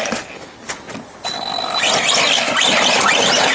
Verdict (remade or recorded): recorded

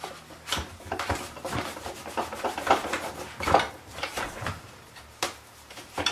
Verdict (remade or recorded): remade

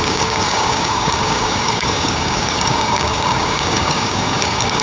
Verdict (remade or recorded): remade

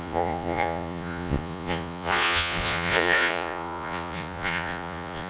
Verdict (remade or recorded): remade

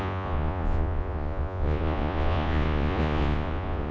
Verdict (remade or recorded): remade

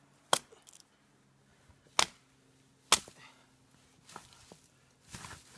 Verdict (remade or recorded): recorded